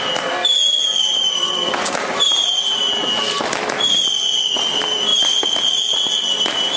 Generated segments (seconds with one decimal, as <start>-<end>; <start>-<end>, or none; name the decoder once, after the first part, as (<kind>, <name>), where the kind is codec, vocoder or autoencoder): 1.1-2.8 (vocoder, BigVGAN v2)